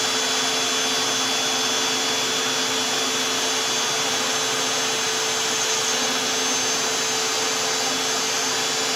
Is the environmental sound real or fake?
real